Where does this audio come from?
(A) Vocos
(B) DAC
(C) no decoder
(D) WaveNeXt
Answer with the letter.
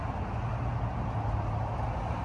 C